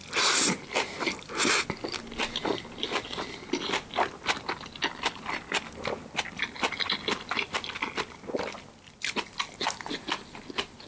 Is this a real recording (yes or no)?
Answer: yes